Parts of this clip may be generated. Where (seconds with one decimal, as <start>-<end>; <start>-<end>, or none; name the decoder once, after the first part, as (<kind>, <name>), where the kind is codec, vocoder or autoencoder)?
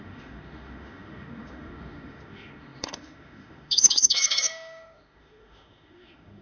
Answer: 0.0-6.4 (autoencoder, DAC-VAE)